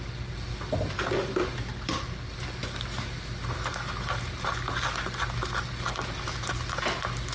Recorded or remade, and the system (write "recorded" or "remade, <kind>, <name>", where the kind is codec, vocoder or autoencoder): recorded